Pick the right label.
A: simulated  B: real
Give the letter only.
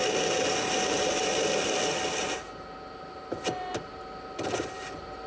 B